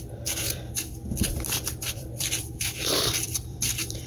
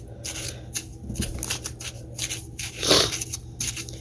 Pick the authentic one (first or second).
second